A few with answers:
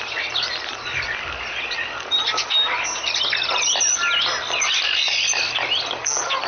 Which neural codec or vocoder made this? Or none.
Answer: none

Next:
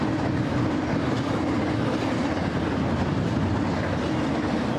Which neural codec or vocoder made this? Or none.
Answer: none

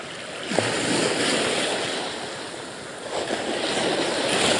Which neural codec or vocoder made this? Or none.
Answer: none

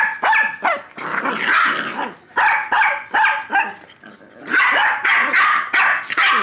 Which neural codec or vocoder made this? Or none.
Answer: none